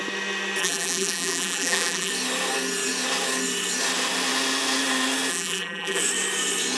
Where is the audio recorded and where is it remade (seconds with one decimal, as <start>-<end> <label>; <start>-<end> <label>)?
0.0-0.6 recorded; 0.6-2.1 remade; 2.1-5.3 recorded; 5.3-6.0 remade; 6.0-6.8 recorded